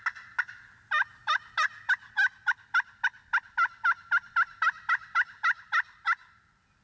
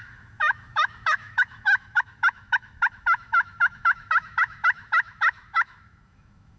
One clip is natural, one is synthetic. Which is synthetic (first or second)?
second